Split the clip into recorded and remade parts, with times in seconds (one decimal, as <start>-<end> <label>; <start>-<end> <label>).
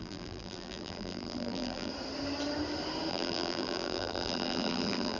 0.0-1.9 remade; 1.9-3.1 recorded; 3.1-5.2 remade